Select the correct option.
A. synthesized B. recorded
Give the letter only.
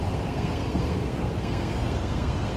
A